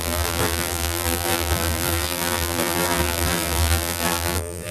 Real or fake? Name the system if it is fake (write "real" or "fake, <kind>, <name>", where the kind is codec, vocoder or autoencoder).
fake, vocoder, BigVGAN v2